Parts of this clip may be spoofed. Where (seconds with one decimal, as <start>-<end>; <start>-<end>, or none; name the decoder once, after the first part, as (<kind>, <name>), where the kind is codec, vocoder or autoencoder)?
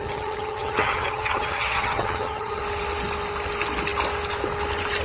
0.0-2.6 (vocoder, HiFi-GAN)